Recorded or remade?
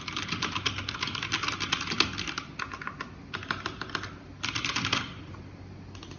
recorded